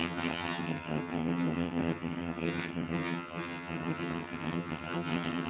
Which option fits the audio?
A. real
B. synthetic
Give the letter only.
B